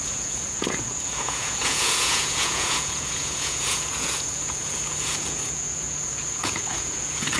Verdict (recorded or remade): remade